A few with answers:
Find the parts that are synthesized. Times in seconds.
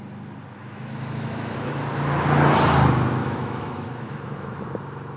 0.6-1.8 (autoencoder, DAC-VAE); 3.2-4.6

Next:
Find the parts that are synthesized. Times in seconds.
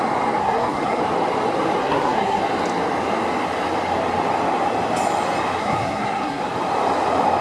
0.4-1.0 (codec, SNAC); 1.8-2.4; 5.6-6.4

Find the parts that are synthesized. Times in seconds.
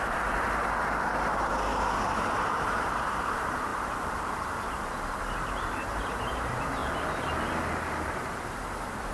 0.0-1.7 (vocoder, BigVGAN v2); 2.2-6.8; 7.9-9.1